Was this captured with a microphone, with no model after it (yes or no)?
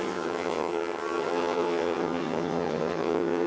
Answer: no